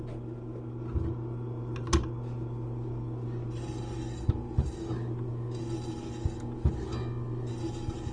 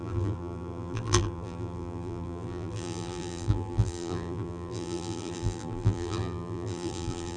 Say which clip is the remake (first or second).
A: second